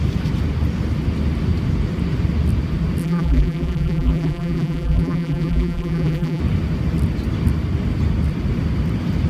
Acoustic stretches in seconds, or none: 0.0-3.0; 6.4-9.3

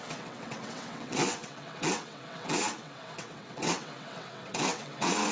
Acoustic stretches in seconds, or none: none

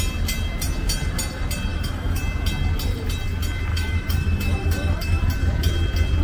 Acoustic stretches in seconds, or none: 0.0-1.7; 2.2-3.7; 5.2-6.2